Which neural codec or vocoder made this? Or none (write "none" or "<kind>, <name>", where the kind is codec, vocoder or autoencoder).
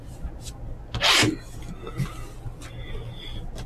none